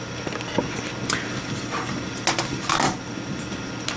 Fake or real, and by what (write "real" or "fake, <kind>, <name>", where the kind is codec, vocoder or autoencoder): real